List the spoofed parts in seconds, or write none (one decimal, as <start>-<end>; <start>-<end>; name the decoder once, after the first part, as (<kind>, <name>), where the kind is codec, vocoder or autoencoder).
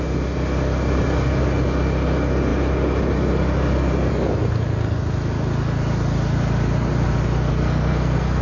7.5-8.4 (codec, SNAC)